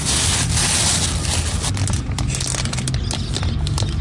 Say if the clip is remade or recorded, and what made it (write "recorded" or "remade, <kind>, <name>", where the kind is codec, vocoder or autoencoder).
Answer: recorded